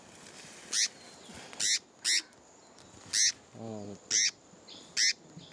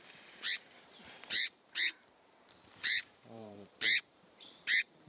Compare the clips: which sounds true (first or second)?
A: first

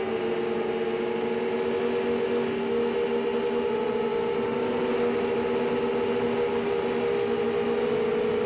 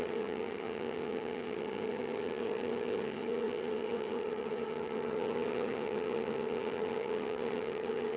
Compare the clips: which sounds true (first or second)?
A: first